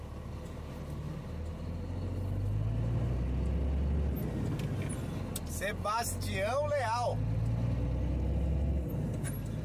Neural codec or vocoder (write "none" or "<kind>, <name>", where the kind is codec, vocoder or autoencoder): none